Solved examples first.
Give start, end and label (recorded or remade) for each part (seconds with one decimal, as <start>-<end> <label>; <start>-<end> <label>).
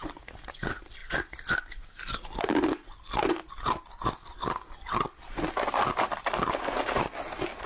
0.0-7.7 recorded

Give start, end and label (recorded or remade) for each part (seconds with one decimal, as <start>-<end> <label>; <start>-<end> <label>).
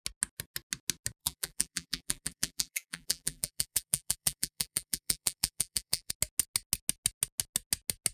0.0-1.2 recorded; 1.2-6.1 remade; 6.1-8.1 recorded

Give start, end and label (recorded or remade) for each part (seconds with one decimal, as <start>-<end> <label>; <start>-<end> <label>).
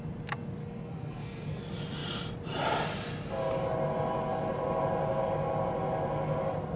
0.0-0.6 recorded; 0.6-1.6 remade; 1.6-6.8 recorded